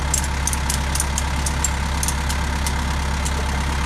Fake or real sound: real